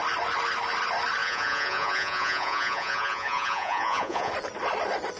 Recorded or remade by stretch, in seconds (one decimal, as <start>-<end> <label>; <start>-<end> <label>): 0.0-1.2 recorded; 1.2-4.3 remade; 4.3-5.2 recorded